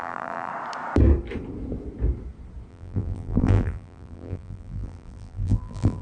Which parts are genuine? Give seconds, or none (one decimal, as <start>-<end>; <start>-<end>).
0.5-2.7